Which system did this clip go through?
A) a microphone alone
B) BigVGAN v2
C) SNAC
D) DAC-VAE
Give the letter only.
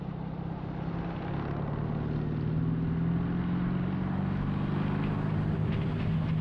A